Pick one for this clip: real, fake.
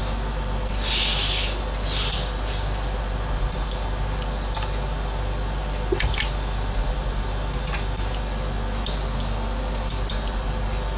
real